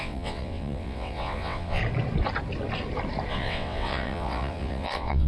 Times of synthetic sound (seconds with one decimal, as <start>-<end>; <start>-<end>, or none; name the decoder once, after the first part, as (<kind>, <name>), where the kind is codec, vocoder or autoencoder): 0.0-1.8 (vocoder, WaveNeXt); 3.3-5.3